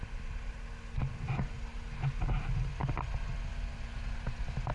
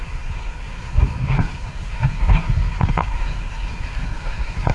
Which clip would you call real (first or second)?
first